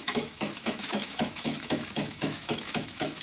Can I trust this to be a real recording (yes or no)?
no